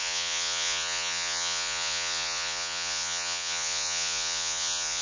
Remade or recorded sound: remade